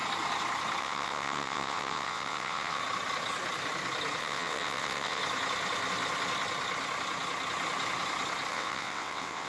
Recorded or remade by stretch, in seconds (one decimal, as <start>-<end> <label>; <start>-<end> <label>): 0.0-0.8 recorded; 0.8-2.8 remade; 2.8-4.2 recorded; 4.2-5.2 remade; 5.2-8.5 recorded; 8.5-9.5 remade